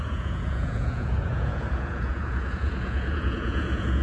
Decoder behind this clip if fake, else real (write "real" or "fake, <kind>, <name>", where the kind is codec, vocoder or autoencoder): fake, vocoder, Vocos